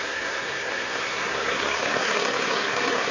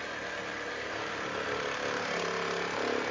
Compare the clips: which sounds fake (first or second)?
first